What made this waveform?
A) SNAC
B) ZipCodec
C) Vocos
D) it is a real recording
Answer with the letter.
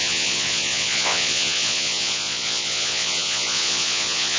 C